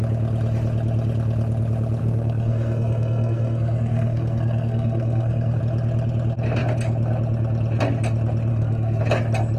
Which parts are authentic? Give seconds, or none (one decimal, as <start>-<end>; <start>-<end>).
0.0-2.0; 5.6-8.5; 9.0-9.6